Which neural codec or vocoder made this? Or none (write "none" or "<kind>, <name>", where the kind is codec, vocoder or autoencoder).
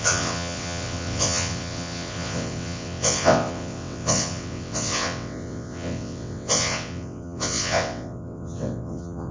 vocoder, WaveNeXt